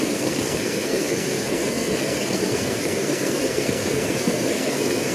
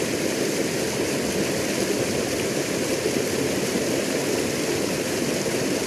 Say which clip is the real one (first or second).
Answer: second